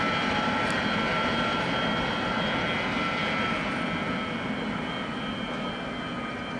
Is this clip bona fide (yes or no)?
yes